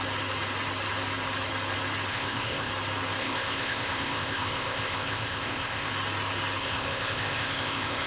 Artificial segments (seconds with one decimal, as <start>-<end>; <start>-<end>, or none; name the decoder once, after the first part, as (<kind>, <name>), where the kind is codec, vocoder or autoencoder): 2.1-2.7 (codec, ZipCodec); 3.2-5.9; 6.6-8.1